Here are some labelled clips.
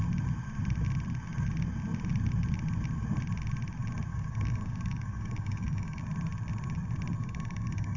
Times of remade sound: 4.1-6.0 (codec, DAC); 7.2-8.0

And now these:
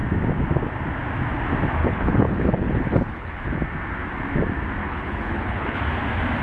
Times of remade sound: 1.8-3.5 (codec, HILCodec); 4.8-5.8

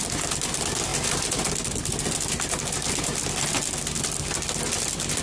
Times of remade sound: none